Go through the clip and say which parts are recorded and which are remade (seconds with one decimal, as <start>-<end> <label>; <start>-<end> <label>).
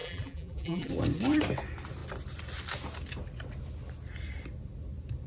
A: 0.0-0.9 remade; 0.9-5.3 recorded